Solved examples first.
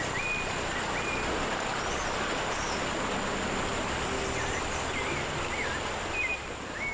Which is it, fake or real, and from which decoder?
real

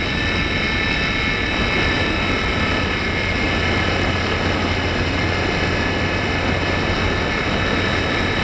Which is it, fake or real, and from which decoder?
real